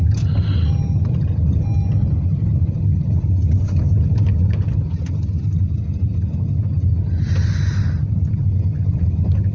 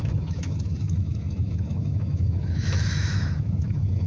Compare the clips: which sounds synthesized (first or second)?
second